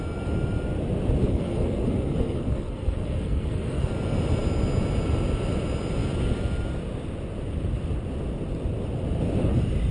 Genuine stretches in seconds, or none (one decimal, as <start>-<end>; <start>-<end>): 0.0-1.2; 3.9-9.9